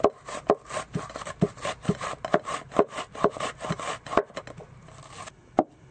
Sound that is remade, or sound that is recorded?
recorded